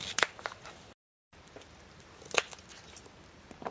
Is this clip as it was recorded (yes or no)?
no